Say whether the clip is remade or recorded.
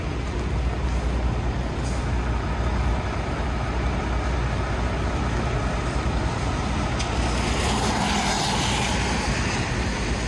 recorded